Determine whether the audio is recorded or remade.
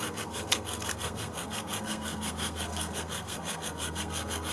remade